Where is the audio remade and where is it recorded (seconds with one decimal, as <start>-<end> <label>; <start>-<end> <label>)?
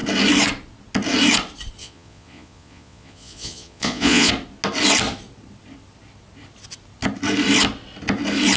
0.0-1.8 recorded; 1.8-4.3 remade; 4.3-8.6 recorded